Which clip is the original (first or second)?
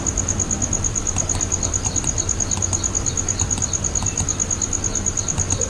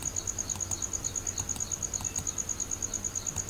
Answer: second